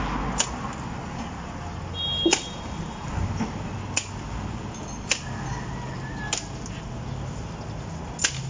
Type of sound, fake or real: real